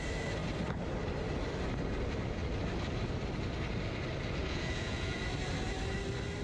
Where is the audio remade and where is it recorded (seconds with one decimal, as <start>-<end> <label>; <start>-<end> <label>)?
0.0-4.4 recorded; 4.4-5.2 remade; 5.2-6.4 recorded